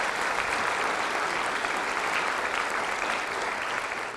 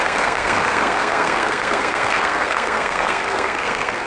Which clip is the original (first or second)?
first